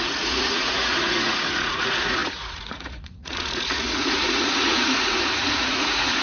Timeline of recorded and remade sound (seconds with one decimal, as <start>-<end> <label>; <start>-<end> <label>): 0.0-6.2 remade